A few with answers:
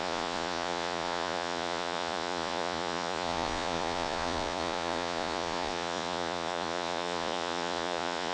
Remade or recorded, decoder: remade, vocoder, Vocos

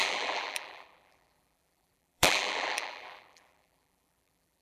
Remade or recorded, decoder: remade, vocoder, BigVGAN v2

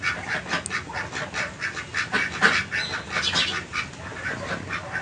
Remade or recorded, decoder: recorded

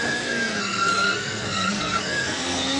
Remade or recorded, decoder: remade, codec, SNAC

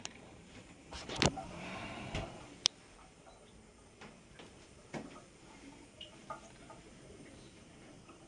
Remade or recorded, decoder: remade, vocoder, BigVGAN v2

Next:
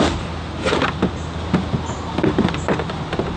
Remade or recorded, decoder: recorded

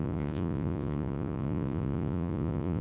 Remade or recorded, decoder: remade, vocoder, Vocos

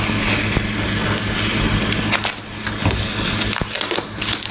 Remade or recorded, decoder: recorded